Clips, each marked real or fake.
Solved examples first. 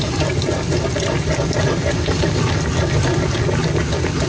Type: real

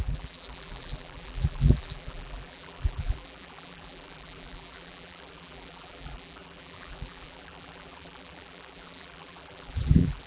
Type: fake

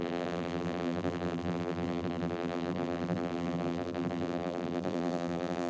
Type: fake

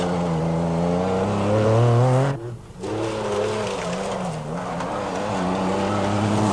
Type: real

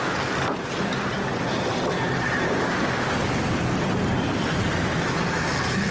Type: real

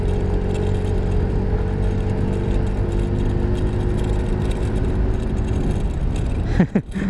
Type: real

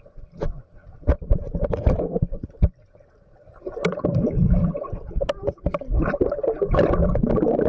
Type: fake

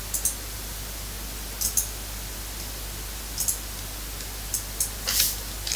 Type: real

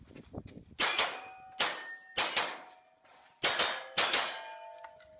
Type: real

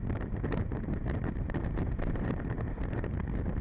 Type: fake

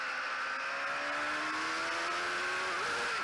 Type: real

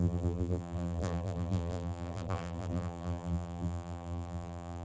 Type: fake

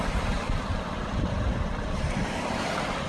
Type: fake